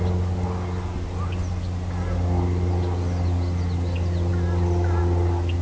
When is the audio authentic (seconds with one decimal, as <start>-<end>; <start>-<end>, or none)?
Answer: 0.0-5.6